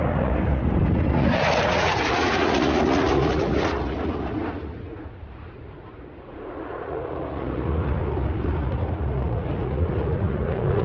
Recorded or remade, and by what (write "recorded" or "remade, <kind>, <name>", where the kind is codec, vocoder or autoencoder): remade, vocoder, Vocos